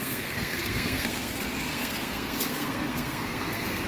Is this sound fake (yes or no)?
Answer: yes